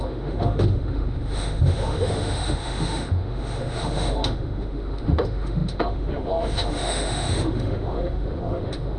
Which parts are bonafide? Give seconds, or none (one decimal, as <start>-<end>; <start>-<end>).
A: none

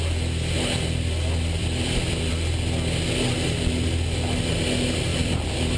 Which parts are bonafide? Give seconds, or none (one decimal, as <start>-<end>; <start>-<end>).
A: 0.0-1.6; 2.3-5.1